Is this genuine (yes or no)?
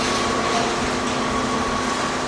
yes